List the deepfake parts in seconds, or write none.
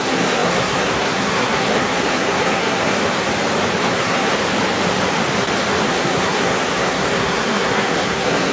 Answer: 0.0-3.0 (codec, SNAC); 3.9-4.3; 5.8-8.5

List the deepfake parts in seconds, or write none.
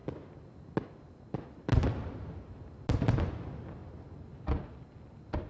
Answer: none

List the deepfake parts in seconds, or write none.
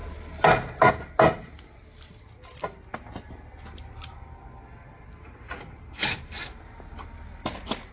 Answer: none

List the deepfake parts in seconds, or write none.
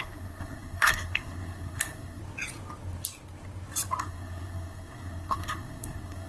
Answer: 0.0-2.2 (codec, SNAC); 4.0-6.3